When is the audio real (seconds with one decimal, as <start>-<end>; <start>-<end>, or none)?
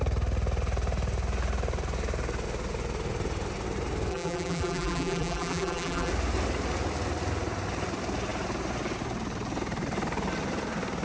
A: 0.0-4.1; 6.1-11.0